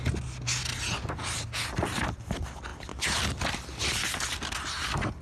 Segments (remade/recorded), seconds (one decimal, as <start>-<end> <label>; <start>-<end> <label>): 0.0-5.2 recorded